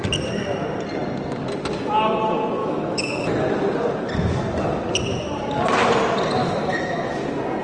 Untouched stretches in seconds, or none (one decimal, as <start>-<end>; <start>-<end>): 0.0-2.6; 3.3-6.4; 7.1-7.6